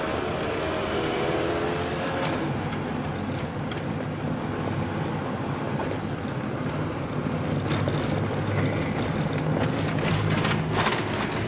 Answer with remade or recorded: recorded